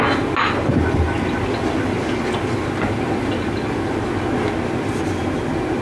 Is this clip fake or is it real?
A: real